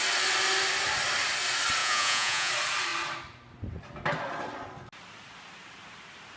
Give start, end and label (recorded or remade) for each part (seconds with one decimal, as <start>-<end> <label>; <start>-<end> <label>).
0.0-1.8 recorded; 1.8-2.5 remade; 2.5-6.4 recorded